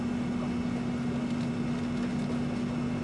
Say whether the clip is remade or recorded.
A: recorded